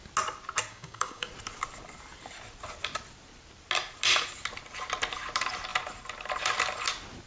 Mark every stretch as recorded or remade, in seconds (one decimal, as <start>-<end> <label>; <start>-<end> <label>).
0.0-0.7 recorded; 0.7-1.3 remade; 1.3-7.3 recorded